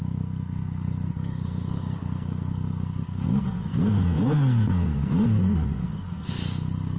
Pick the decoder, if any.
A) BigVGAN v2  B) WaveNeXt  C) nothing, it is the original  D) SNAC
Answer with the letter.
D